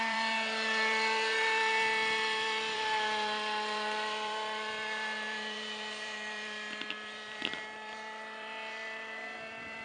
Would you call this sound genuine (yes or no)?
no